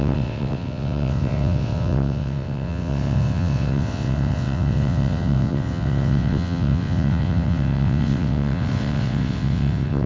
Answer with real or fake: fake